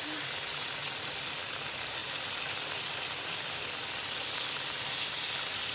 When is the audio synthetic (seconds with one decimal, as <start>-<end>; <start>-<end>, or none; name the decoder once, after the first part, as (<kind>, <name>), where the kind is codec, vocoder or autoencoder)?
0.8-1.5 (vocoder, BigVGAN v2); 2.0-4.9